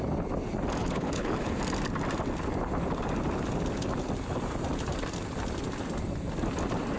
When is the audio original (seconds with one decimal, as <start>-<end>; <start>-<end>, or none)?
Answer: 0.0-0.8; 1.6-7.0